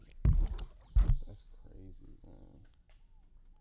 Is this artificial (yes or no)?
no